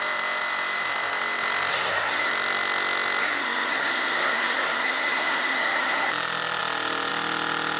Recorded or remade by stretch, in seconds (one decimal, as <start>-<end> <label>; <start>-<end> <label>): 0.0-1.7 recorded; 1.7-2.3 remade; 2.3-3.2 recorded; 3.2-6.1 remade; 6.1-7.8 recorded